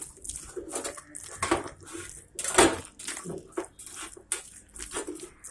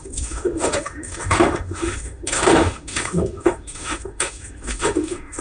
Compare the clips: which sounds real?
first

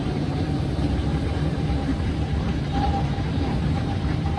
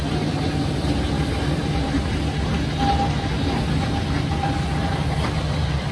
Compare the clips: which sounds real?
second